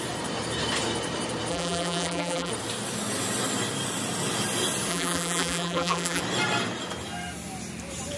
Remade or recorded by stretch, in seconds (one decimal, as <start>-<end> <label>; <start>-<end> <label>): 0.0-1.5 recorded; 1.5-2.5 remade; 2.5-4.9 recorded; 4.9-6.2 remade; 6.2-8.2 recorded